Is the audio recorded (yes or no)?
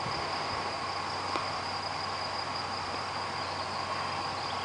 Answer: yes